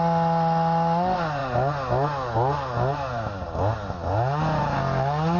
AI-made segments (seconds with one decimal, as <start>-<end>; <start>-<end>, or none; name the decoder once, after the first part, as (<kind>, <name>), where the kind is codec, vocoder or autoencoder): none